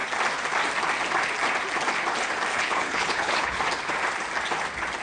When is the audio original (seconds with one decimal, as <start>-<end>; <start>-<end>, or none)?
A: 0.0-2.5; 3.6-5.0